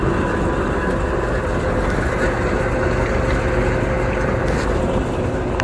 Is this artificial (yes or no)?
no